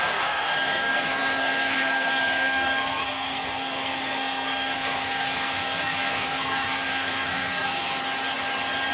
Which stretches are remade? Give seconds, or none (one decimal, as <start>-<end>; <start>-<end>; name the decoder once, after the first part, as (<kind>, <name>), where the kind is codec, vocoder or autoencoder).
0.0-8.0 (codec, SNAC)